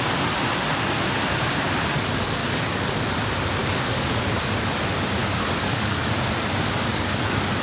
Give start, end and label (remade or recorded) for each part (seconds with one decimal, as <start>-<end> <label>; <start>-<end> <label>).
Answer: 0.0-2.4 recorded; 2.4-3.0 remade; 3.0-3.6 recorded; 3.6-4.3 remade; 4.3-5.2 recorded; 5.2-6.1 remade; 6.1-6.9 recorded; 6.9-7.6 remade